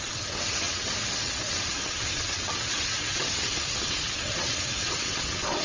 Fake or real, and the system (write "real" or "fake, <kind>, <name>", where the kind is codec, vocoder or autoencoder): fake, vocoder, WaveNeXt